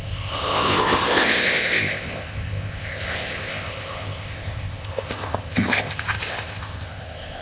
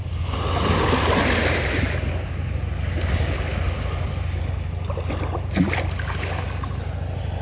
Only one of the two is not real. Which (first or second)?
first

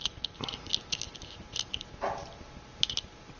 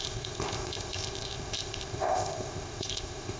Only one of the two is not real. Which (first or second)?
second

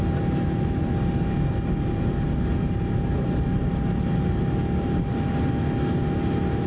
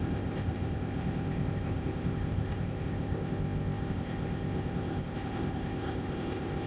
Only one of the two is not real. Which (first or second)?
second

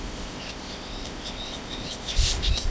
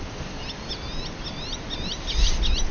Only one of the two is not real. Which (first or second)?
first